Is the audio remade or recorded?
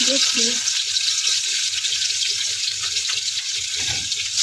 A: remade